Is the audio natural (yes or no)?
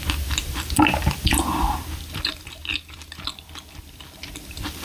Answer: yes